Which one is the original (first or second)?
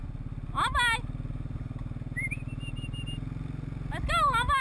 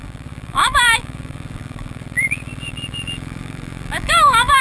first